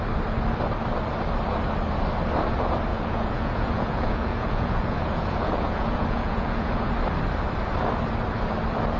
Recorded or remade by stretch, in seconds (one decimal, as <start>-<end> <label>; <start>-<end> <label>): 0.0-2.9 recorded; 2.9-6.9 remade; 6.9-9.0 recorded